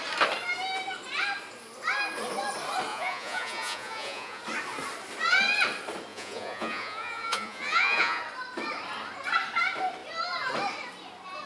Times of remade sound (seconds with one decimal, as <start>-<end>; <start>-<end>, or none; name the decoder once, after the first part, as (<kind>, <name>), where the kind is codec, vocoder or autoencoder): 2.9-4.4 (vocoder, Vocos); 6.1-8.2